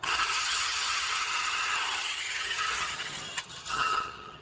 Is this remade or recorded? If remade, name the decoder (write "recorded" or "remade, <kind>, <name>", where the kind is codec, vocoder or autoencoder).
remade, vocoder, HiFi-GAN